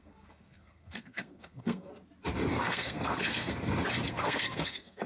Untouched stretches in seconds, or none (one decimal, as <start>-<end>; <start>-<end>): 1.9-2.5; 3.5-4.1